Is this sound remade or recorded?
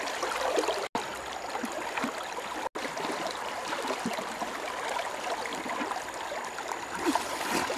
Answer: recorded